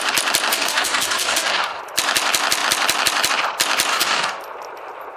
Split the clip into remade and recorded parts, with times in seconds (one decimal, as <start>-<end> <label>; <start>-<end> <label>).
0.0-0.5 recorded; 0.5-1.8 remade; 1.8-3.9 recorded; 3.9-4.4 remade; 4.4-5.2 recorded